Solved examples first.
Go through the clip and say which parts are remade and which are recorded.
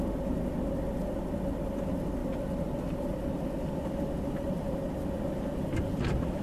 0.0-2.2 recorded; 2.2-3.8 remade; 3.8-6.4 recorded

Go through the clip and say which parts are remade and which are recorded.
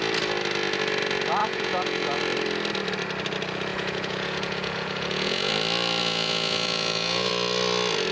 0.0-1.4 recorded; 1.4-2.2 remade; 2.2-3.7 recorded; 3.7-5.5 remade; 5.5-6.0 recorded; 6.0-7.3 remade; 7.3-8.1 recorded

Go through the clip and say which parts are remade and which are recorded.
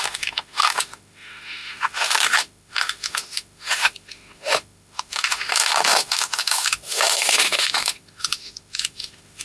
0.0-9.4 remade